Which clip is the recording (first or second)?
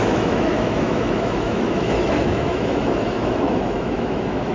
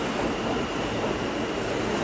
second